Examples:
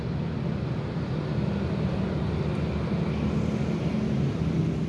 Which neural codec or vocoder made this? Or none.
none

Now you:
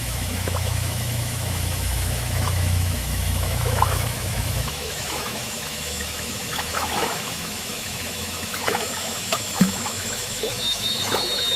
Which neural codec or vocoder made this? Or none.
autoencoder, DAC-VAE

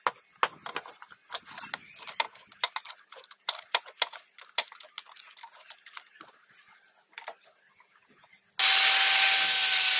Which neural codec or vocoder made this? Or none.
none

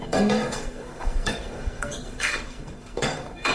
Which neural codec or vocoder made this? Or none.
codec, SNAC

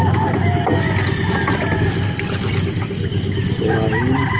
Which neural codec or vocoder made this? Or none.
none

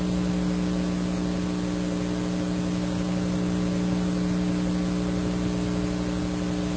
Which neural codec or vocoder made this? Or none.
none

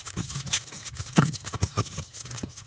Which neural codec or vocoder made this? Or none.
codec, SNAC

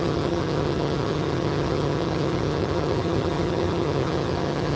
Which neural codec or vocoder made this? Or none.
vocoder, HiFi-GAN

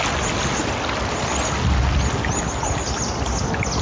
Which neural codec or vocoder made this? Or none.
none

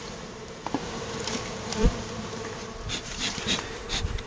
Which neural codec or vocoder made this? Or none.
vocoder, BigVGAN v2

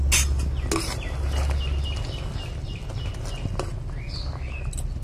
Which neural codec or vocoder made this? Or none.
none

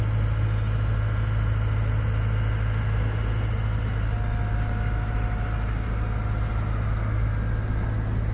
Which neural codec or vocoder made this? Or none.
none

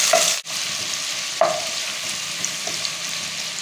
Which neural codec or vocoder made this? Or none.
none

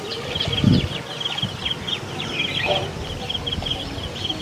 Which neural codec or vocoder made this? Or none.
none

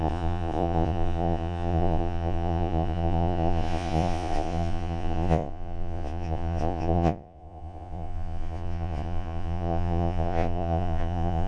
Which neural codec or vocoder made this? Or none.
vocoder, Vocos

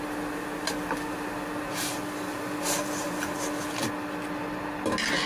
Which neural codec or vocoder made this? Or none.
none